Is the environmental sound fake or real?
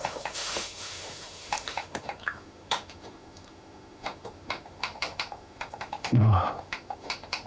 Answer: fake